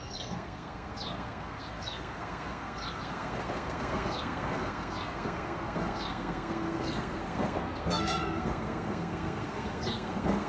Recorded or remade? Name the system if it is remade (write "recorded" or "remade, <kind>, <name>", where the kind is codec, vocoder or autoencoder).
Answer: remade, codec, SNAC